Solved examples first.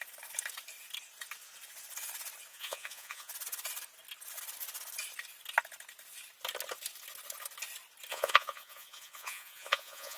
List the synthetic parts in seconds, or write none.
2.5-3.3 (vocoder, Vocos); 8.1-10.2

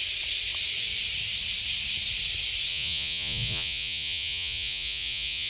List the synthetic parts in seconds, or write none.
2.7-5.5 (vocoder, Vocos)

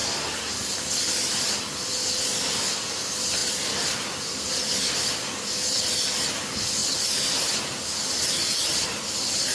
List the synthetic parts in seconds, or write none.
none

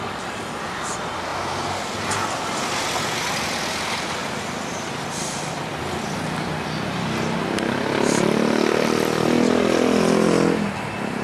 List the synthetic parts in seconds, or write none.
none